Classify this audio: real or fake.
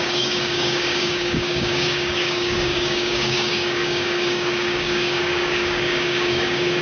fake